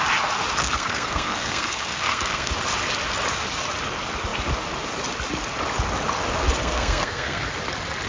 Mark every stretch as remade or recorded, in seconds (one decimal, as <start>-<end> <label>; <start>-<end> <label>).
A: 0.0-0.6 recorded; 0.6-2.5 remade; 2.5-6.6 recorded; 6.6-7.4 remade; 7.4-8.1 recorded